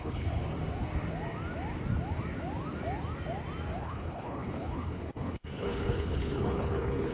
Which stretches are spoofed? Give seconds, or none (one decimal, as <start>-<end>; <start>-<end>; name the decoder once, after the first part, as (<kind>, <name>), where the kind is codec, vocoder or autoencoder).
0.0-0.4 (codec, HILCodec); 3.8-7.1